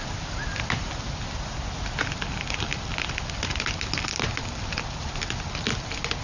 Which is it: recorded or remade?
recorded